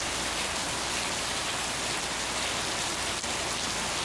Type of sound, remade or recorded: recorded